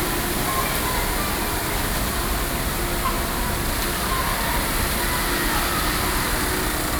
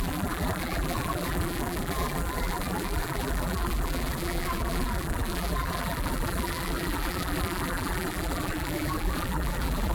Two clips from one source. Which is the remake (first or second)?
second